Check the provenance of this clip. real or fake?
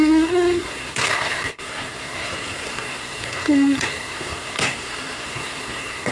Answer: fake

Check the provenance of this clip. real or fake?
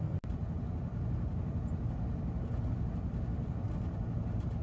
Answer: real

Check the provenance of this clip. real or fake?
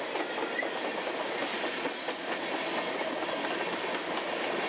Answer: real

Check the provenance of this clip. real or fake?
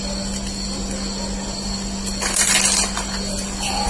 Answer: real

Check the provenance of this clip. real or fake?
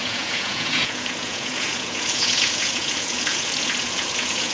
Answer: fake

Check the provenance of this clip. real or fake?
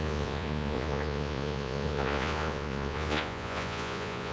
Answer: fake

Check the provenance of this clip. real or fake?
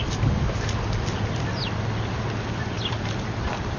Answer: real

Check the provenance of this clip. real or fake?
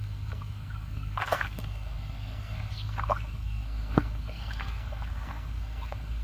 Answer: fake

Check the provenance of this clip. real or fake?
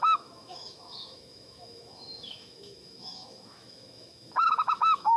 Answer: fake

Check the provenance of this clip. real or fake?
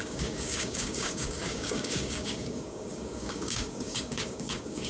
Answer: fake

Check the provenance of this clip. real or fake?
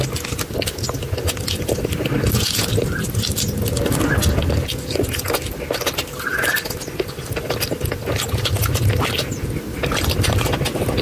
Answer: real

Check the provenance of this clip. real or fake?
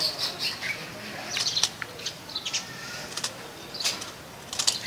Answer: real